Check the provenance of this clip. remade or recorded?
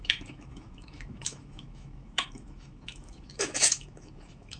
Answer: remade